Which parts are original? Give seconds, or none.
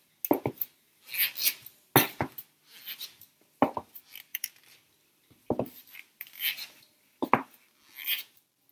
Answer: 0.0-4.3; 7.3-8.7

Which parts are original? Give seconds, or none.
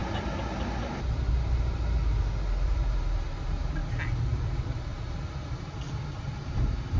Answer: 0.0-2.5; 3.8-6.2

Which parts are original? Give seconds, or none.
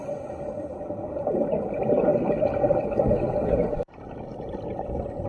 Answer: 0.0-5.3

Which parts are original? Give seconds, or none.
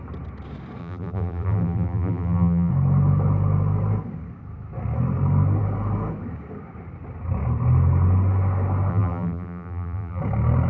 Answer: 0.0-0.8; 2.7-8.9; 10.2-10.7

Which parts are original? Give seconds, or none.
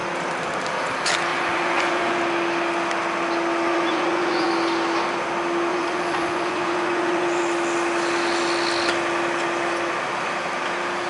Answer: 0.0-1.3; 2.2-3.7; 4.5-5.7; 7.4-11.1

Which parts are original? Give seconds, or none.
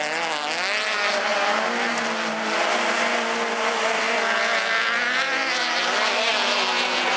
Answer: 0.0-7.2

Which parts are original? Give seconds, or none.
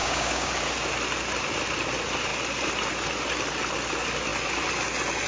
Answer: 0.5-5.3